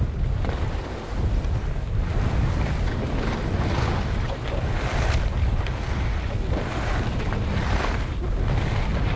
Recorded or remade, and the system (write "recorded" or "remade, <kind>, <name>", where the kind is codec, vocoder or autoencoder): recorded